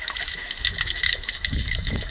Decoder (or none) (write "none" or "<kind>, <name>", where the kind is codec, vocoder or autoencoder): autoencoder, DAC-VAE